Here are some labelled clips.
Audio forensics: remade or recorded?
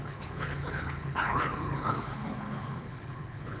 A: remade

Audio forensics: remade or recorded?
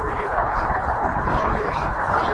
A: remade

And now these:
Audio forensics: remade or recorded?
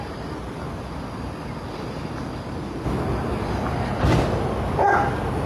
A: recorded